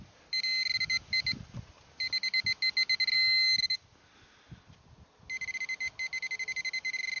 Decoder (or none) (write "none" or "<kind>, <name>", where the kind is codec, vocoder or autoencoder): none